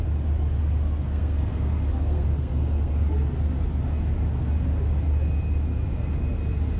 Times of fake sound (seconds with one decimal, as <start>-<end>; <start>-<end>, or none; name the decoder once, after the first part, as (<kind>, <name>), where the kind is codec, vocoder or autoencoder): 1.0-3.2 (codec, SNAC)